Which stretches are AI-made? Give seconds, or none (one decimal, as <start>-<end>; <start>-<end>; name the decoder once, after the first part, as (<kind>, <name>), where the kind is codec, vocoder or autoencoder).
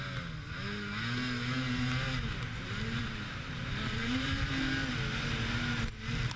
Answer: 3.0-4.5 (vocoder, BigVGAN v2)